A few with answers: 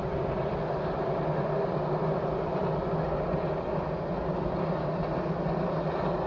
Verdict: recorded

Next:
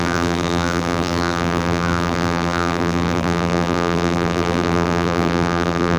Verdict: remade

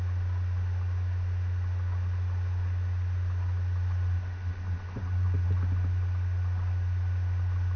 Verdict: recorded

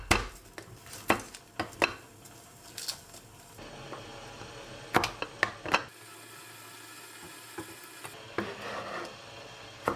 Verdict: recorded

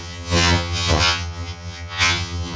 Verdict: remade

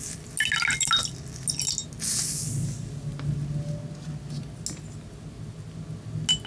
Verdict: recorded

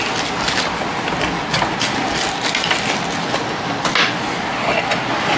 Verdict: recorded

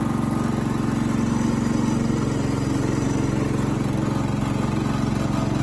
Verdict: recorded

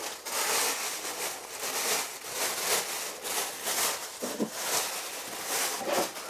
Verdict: recorded